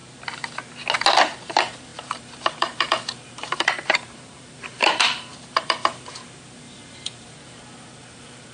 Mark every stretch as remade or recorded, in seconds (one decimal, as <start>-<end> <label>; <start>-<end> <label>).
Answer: 0.0-1.5 recorded; 1.5-8.5 remade